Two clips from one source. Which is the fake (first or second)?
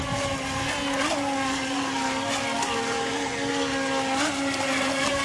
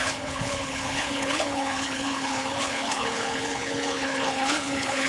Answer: second